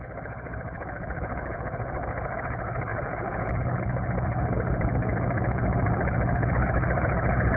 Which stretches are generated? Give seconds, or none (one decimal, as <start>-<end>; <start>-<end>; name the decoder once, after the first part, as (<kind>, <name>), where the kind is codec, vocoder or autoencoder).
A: 0.0-7.6 (codec, HILCodec)